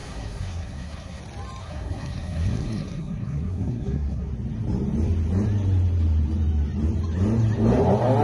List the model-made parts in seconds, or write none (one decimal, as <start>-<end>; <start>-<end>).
0.0-1.2; 1.6-4.3